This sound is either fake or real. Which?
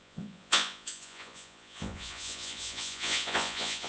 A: fake